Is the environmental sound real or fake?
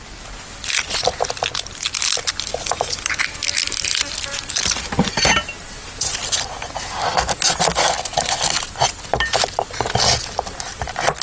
real